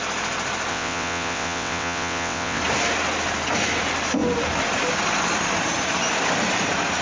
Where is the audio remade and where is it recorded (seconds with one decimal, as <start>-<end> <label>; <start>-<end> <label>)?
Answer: 0.0-0.7 recorded; 0.7-2.6 remade; 2.6-7.0 recorded